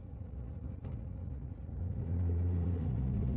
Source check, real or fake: fake